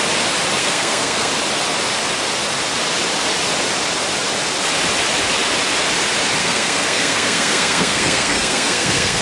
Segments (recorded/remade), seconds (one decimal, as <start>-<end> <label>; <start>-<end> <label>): 0.0-0.6 recorded; 0.6-1.3 remade; 1.3-6.4 recorded; 6.4-9.2 remade